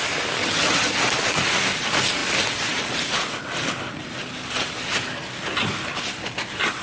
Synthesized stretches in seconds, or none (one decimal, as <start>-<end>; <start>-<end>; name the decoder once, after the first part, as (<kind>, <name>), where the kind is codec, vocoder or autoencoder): 0.4-1.0 (vocoder, HiFi-GAN)